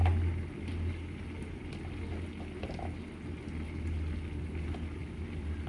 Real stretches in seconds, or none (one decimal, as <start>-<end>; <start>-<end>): 0.0-5.7

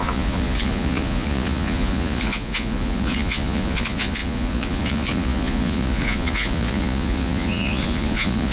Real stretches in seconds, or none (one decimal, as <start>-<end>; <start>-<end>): none

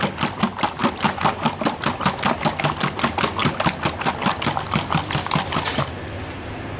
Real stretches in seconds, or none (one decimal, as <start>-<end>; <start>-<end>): 0.0-6.8

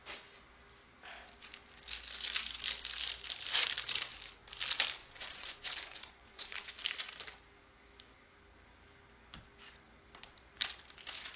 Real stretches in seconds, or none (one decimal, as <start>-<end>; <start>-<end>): 0.0-5.0; 6.7-11.3

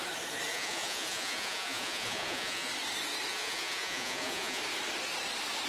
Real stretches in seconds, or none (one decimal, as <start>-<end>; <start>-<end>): 0.0-0.5; 2.7-3.3; 4.6-5.7

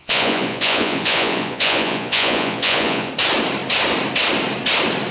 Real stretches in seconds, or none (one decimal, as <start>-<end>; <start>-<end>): 3.1-5.1

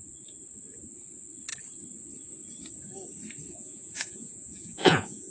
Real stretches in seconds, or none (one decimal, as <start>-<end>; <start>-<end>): 0.0-3.5

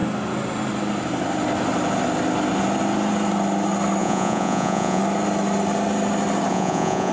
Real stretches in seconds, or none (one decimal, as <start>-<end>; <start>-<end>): 0.0-4.0; 5.0-6.5